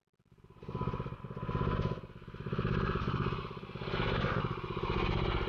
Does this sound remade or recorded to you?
recorded